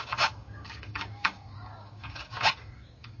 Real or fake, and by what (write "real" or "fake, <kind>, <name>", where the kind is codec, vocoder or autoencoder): fake, codec, DAC